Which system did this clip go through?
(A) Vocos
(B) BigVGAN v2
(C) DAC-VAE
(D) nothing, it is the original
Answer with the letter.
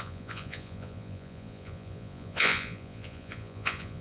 A